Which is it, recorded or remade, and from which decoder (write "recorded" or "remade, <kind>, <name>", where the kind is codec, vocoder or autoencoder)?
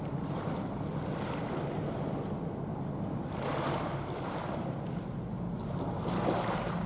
recorded